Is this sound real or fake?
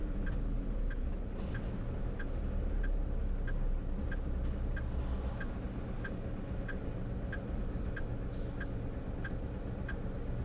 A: real